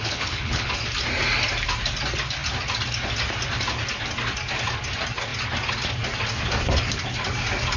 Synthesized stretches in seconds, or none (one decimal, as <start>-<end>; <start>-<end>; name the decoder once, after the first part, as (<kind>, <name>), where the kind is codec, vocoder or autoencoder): 0.0-0.7 (codec, HILCodec)